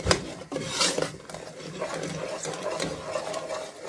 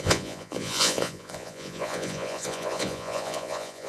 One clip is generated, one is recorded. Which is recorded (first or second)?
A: first